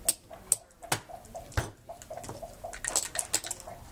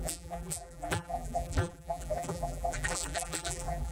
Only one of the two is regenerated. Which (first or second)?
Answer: second